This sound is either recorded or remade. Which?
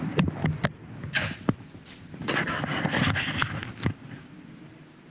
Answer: recorded